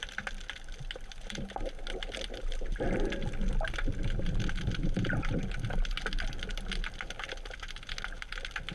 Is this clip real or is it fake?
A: real